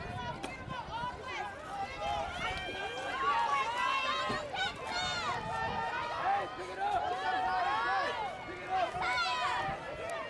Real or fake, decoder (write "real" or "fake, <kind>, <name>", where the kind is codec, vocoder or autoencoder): real